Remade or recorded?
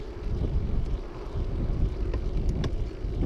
recorded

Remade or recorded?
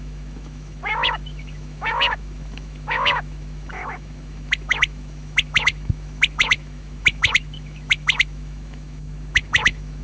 remade